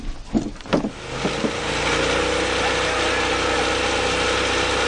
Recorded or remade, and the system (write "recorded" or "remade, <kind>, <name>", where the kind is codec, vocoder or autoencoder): recorded